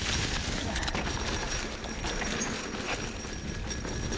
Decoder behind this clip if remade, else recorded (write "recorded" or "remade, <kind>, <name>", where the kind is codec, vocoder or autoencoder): recorded